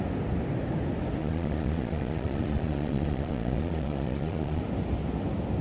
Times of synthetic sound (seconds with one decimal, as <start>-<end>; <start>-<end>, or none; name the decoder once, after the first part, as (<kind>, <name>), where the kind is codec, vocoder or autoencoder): 1.2-4.6 (vocoder, Vocos)